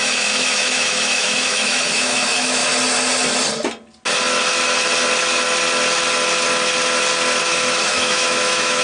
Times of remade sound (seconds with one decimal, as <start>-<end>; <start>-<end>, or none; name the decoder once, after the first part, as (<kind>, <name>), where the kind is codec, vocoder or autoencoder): 0.0-2.6 (autoencoder, DAC-VAE); 7.4-8.8